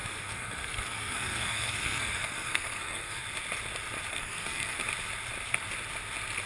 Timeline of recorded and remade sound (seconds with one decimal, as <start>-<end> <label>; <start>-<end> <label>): 0.0-3.2 remade; 3.2-4.1 recorded; 4.1-4.8 remade; 4.8-6.5 recorded

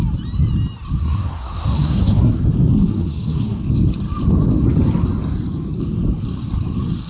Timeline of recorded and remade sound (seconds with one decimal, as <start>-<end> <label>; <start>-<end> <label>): 0.0-1.0 recorded; 1.0-2.3 remade; 2.3-2.7 recorded; 2.7-3.6 remade; 3.6-7.1 recorded

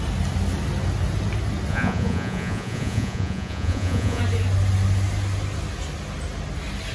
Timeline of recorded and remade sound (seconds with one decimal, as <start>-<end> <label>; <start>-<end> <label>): 0.0-1.7 recorded; 1.7-4.2 remade; 4.2-6.9 recorded